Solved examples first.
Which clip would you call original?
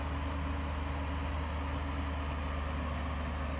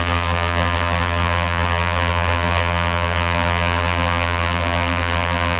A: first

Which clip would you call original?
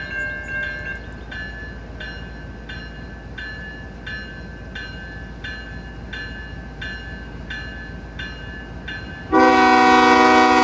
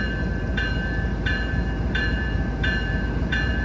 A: first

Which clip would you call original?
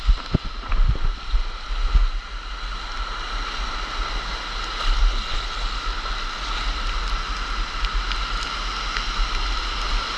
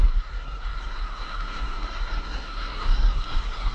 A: first